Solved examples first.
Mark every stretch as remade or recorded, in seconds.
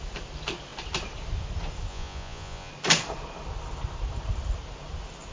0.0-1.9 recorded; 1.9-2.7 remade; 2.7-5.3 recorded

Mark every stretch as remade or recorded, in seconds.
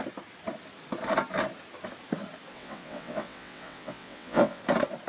0.0-2.5 recorded; 2.5-4.6 remade; 4.6-5.1 recorded